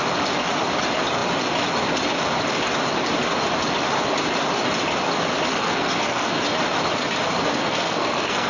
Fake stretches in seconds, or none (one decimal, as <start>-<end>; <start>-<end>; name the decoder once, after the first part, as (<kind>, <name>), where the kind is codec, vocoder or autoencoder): 5.5-6.4 (codec, SNAC); 7.6-8.5